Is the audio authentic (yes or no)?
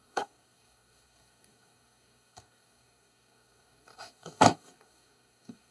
no